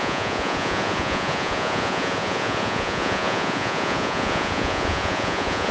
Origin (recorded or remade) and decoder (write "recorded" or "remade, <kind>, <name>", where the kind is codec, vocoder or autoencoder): remade, vocoder, Vocos